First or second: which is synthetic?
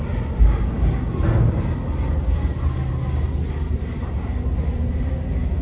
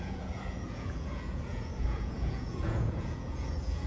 second